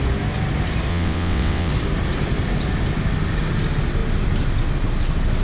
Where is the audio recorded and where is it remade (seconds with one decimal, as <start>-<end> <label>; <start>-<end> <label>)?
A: 0.0-0.9 recorded; 0.9-1.7 remade; 1.7-5.4 recorded